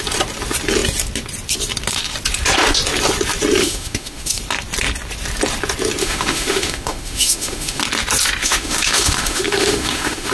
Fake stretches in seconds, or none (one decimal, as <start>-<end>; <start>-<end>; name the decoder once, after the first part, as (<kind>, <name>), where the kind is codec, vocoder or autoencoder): 3.6-4.4 (autoencoder, DAC-VAE); 6.0-7.8; 8.4-10.3